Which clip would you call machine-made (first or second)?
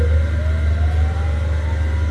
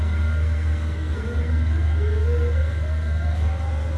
second